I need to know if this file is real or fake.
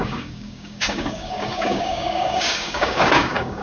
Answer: fake